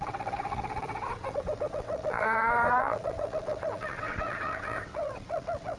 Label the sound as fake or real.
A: fake